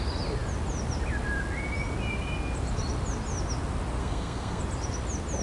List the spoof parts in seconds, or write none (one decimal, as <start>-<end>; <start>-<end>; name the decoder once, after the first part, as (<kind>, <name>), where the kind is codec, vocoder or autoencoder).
4.0-4.6 (codec, SNAC)